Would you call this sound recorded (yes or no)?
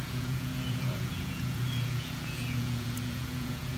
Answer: no